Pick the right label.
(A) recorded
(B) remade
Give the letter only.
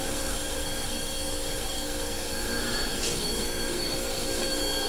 B